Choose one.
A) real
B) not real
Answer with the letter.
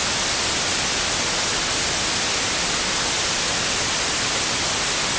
A